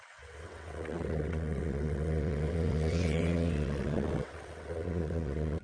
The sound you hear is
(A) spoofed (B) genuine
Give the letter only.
A